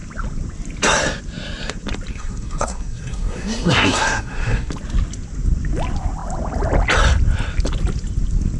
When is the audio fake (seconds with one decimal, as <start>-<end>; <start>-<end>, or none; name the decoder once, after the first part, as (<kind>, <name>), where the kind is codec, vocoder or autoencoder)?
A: 2.1-4.7 (codec, SNAC)